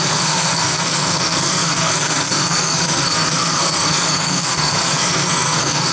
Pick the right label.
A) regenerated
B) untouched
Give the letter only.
A